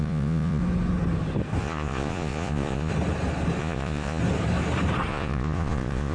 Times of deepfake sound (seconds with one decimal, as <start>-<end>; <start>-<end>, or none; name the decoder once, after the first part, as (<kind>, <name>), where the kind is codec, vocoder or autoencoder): 0.0-0.6 (vocoder, Vocos); 1.6-2.9; 3.6-4.2; 5.1-6.1